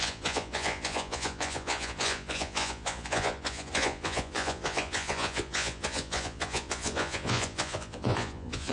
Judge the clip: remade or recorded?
remade